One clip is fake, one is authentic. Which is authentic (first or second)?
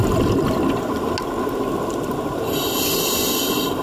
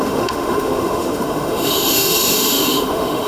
first